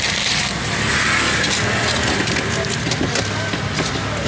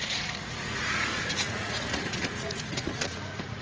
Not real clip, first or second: second